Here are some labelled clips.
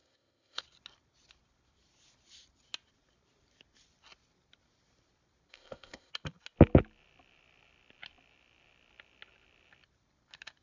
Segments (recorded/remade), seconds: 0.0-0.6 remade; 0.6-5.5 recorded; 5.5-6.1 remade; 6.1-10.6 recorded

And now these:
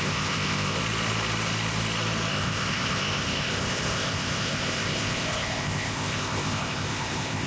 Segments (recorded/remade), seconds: 0.0-0.8 remade; 0.8-2.3 recorded; 2.3-7.5 remade

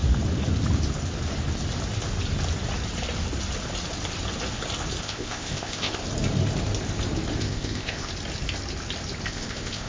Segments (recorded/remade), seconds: 0.0-5.0 recorded; 5.0-6.0 remade; 6.0-7.4 recorded; 7.4-8.1 remade; 8.1-9.3 recorded; 9.3-9.9 remade

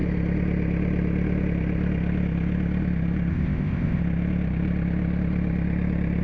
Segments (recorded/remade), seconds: 0.0-3.3 recorded; 3.3-4.0 remade; 4.0-6.2 recorded

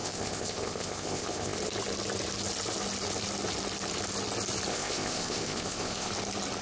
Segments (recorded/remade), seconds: 0.0-1.6 remade; 1.6-4.7 recorded; 4.7-6.1 remade; 6.1-6.6 recorded

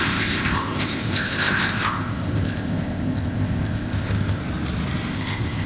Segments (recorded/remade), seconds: 0.0-4.4 remade; 4.4-5.1 recorded; 5.1-5.7 remade

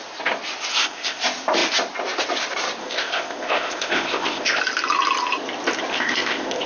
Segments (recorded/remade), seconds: 0.0-0.7 recorded; 0.7-1.2 remade; 1.2-2.8 recorded; 2.8-4.6 remade; 4.6-5.9 recorded; 5.9-6.7 remade

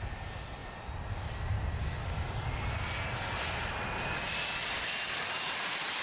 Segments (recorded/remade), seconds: 0.0-6.0 recorded